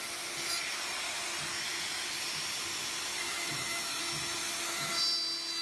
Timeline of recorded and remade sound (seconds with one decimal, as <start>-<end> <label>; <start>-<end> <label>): 0.0-3.1 recorded; 3.1-4.0 remade; 4.0-4.4 recorded; 4.4-4.9 remade; 4.9-5.6 recorded

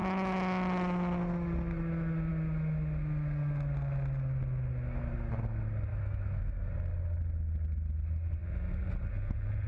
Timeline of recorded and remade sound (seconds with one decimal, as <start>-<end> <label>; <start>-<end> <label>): 0.0-5.9 recorded; 5.9-6.7 remade; 6.7-9.7 recorded

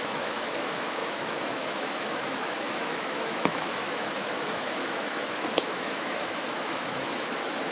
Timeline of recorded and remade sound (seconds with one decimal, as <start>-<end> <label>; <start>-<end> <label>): 0.0-7.7 remade